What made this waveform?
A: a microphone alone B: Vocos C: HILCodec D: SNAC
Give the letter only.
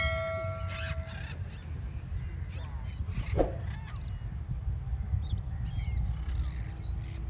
A